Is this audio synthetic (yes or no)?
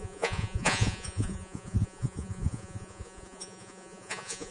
yes